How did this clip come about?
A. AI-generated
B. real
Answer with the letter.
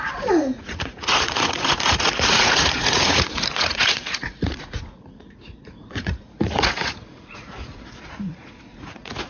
A